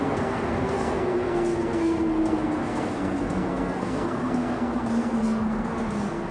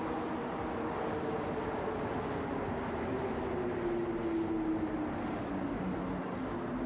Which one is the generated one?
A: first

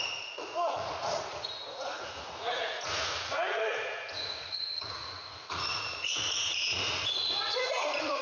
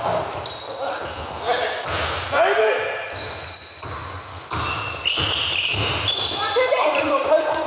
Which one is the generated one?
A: first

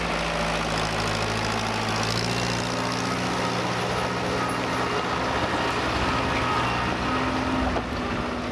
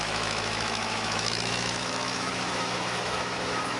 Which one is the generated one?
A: second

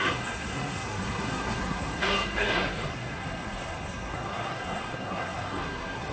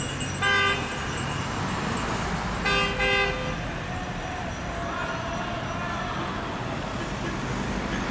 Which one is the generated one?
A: first